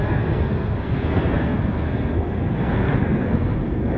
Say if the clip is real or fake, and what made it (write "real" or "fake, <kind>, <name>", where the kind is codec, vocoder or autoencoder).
fake, codec, SNAC